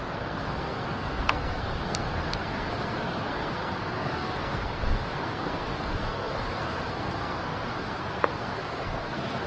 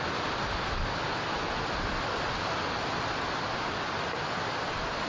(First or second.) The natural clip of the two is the second